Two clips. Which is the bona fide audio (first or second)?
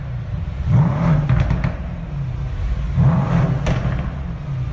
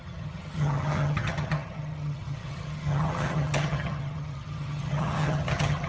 first